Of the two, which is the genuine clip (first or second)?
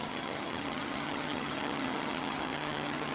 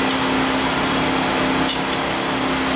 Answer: second